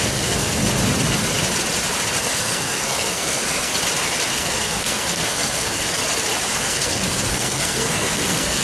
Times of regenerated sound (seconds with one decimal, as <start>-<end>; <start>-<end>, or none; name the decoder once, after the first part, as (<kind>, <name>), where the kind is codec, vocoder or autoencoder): 0.0-0.6 (codec, SNAC); 2.2-3.7; 4.3-6.0; 6.6-8.6